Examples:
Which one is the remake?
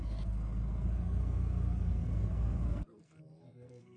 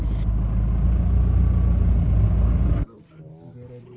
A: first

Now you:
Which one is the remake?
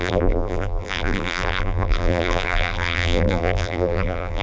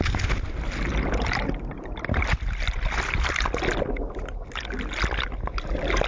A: first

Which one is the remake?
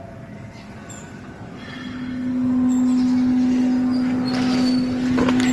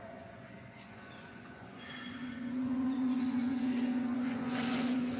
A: second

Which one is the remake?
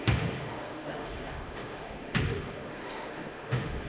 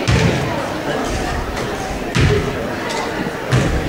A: first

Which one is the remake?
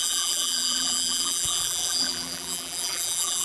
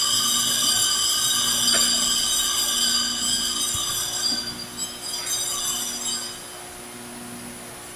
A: first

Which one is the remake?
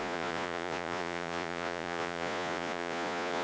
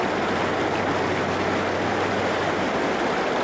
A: first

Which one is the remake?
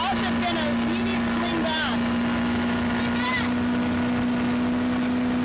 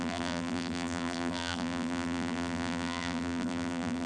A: second